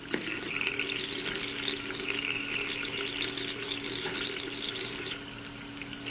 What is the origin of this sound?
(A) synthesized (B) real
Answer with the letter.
B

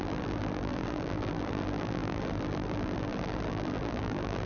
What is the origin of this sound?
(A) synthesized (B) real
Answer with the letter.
A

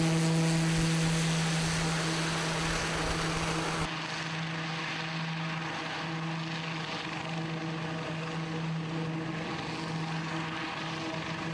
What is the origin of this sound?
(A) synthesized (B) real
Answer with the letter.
B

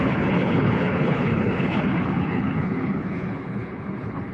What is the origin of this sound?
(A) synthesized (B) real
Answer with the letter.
A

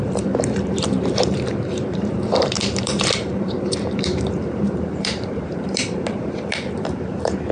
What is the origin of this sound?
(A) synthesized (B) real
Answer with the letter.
A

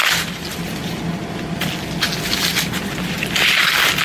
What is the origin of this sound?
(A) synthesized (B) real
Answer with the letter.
B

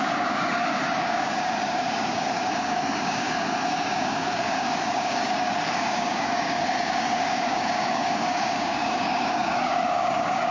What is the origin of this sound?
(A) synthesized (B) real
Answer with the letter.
A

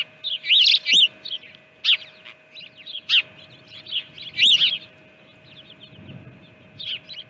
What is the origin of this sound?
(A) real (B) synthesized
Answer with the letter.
A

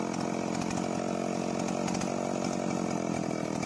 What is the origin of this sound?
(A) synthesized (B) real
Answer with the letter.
B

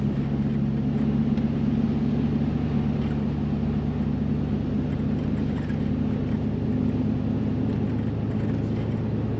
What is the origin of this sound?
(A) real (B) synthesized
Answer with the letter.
A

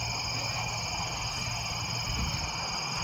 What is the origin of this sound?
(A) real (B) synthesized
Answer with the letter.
A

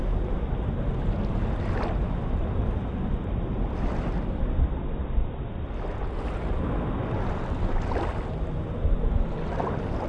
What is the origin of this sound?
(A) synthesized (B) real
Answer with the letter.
B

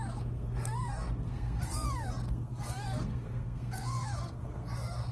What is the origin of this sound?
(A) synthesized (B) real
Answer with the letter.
A